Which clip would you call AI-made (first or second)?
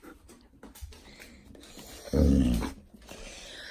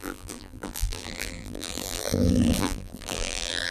second